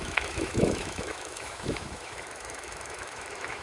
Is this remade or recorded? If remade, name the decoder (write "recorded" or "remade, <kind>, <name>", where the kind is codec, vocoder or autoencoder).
remade, autoencoder, DAC-VAE